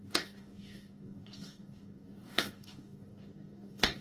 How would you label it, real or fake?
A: fake